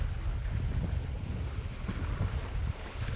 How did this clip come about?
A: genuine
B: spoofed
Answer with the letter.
A